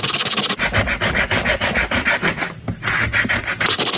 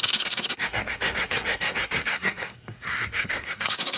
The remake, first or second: second